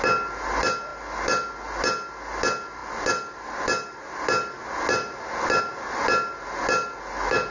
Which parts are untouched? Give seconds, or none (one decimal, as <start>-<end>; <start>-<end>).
0.0-7.5